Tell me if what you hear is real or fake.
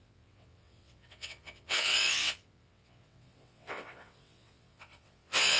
fake